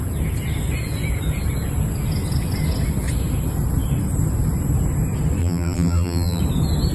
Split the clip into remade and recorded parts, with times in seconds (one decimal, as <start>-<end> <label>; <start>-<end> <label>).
0.0-5.4 recorded; 5.4-6.4 remade; 6.4-6.9 recorded